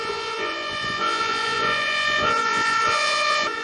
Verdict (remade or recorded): remade